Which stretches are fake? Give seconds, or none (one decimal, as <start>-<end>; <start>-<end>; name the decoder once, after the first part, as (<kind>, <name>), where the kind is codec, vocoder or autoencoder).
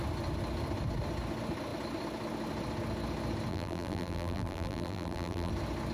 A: 3.5-5.5 (vocoder, BigVGAN v2)